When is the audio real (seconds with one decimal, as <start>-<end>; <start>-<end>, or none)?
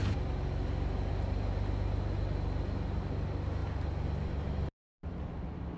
0.0-5.8